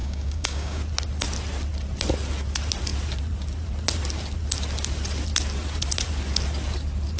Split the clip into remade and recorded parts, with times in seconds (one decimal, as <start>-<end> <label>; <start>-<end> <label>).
0.0-0.8 remade; 0.8-7.2 recorded